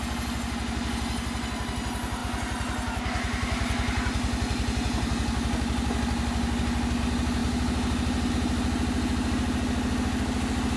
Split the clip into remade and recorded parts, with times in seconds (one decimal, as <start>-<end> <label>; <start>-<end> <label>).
0.0-10.8 recorded